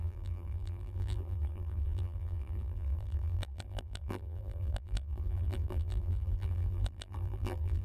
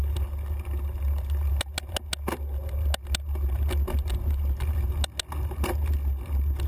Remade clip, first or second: first